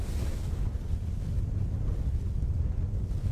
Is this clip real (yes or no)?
yes